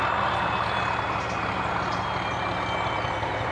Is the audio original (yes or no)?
yes